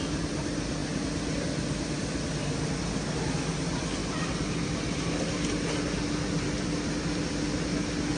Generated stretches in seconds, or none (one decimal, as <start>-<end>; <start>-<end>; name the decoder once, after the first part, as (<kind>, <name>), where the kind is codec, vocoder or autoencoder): none